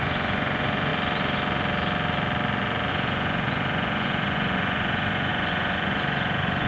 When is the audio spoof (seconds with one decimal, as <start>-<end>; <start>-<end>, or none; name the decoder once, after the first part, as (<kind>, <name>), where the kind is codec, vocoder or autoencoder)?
0.0-0.9 (vocoder, Vocos); 2.9-6.7